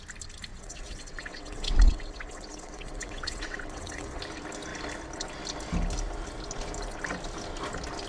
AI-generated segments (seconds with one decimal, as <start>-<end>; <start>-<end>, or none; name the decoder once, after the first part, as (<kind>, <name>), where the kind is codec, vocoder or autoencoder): 0.5-4.2 (vocoder, WaveNeXt)